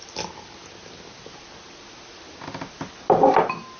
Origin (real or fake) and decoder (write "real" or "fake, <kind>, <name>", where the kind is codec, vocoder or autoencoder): real